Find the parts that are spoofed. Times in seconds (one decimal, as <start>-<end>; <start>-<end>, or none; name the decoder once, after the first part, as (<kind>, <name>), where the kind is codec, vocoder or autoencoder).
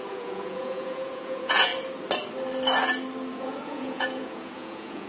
0.0-1.7 (vocoder, Vocos); 3.3-5.1